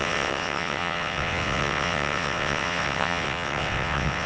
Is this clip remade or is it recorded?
remade